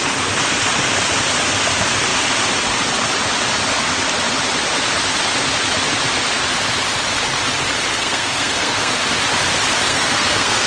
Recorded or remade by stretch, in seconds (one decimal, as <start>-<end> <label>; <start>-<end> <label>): 0.0-7.9 recorded; 7.9-9.0 remade; 9.0-9.9 recorded; 9.9-10.7 remade